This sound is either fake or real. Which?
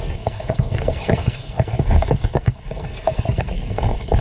fake